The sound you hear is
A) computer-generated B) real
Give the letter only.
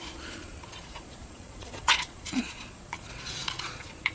A